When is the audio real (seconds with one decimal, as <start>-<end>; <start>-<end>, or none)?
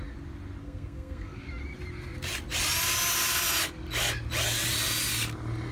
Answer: 0.0-0.6; 1.4-5.7